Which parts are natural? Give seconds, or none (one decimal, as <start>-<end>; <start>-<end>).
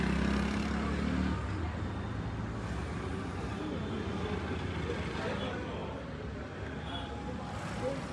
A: 0.0-3.1; 4.7-5.8; 7.4-8.1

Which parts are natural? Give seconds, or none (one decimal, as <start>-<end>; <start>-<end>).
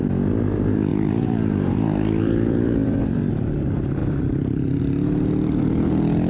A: 0.0-0.9; 3.3-4.0; 4.8-6.3